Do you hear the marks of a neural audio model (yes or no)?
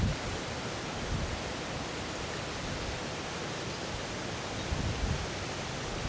yes